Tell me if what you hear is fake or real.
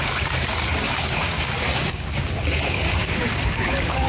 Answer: fake